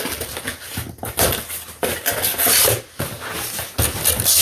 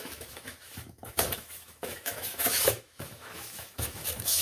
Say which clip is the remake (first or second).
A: second